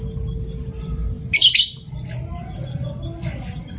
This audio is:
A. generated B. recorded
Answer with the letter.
B